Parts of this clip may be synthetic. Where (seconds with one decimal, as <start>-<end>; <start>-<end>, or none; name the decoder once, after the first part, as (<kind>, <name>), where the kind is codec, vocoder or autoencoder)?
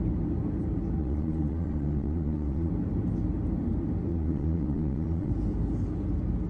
1.0-2.7 (vocoder, Vocos); 4.1-5.3